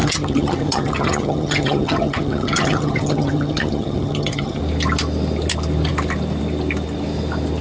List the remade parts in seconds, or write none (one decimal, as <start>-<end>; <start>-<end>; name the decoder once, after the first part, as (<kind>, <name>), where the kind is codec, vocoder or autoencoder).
0.0-4.6 (vocoder, HiFi-GAN)